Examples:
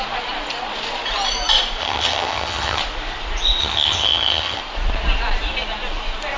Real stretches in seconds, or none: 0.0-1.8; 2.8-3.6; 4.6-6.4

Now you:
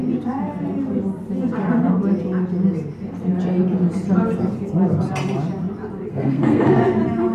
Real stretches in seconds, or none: 0.0-6.1; 6.8-7.3

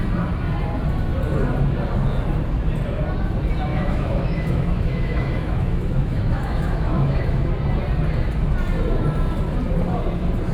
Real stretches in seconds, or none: 0.0-3.7; 7.5-10.5

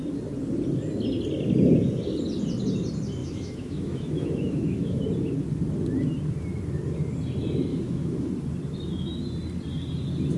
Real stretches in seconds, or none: 0.0-3.2; 5.0-7.7; 8.3-10.4

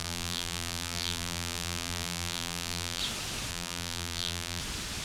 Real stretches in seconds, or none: 3.0-3.5; 4.6-5.0

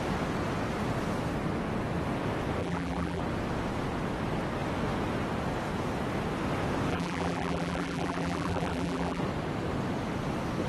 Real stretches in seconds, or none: 0.0-2.6; 3.2-6.9; 9.2-10.7